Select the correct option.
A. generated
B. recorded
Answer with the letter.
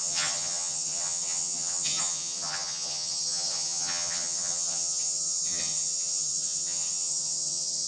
A